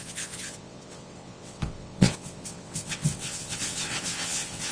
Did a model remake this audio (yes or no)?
yes